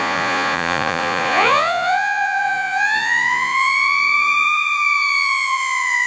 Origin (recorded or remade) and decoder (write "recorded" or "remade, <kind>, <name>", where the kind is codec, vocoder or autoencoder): remade, vocoder, Vocos